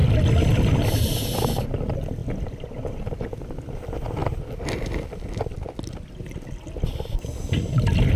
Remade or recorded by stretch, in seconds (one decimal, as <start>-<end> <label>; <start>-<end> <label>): 0.0-8.2 recorded